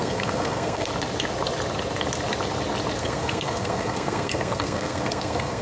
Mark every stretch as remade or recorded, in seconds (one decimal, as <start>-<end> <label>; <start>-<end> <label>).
0.0-0.9 remade; 0.9-3.0 recorded; 3.0-5.6 remade